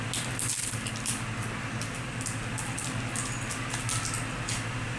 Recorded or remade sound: recorded